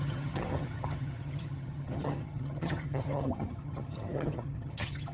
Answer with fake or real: fake